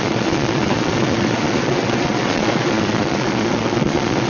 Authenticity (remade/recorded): remade